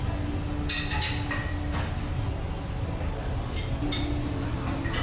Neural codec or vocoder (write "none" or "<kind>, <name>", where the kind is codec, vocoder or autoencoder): none